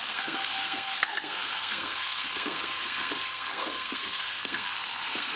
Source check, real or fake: fake